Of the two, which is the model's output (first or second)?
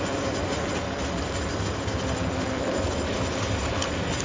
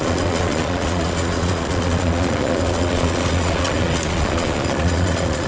second